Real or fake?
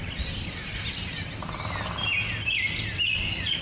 real